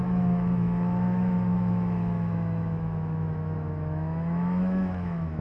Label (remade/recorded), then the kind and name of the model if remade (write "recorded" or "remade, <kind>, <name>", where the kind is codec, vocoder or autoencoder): remade, autoencoder, DAC-VAE